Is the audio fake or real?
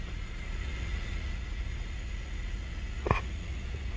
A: fake